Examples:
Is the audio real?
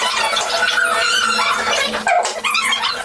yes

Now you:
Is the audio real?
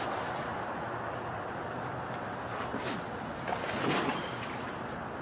yes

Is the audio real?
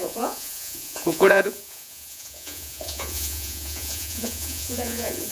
no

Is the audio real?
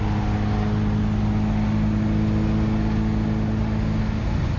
yes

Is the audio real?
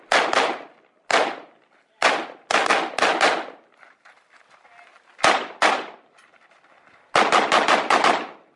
yes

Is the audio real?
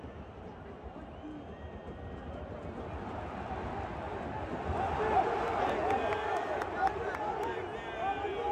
yes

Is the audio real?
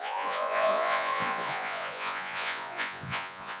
no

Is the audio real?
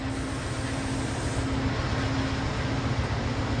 yes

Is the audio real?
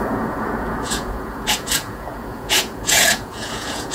no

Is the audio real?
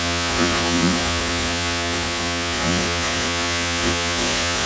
no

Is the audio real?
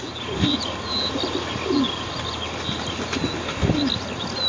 yes